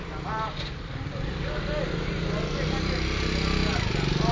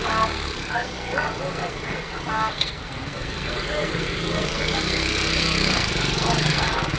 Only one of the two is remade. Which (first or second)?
second